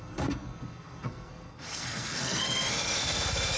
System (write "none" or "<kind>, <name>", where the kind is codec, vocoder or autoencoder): codec, SNAC